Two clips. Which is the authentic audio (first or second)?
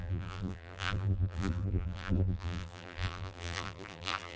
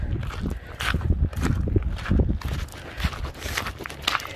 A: second